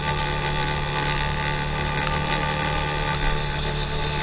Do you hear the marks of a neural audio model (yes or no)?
no